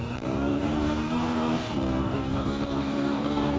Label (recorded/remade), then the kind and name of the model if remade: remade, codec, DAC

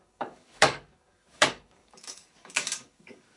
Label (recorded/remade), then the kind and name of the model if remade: remade, codec, DAC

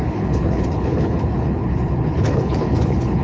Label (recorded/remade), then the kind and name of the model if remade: remade, codec, HILCodec